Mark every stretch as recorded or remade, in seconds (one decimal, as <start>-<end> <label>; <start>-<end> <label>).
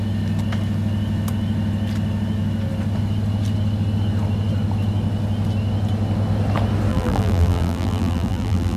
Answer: 0.0-6.9 recorded; 6.9-8.8 remade